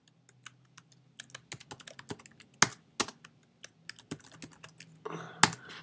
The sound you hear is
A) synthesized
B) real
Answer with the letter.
B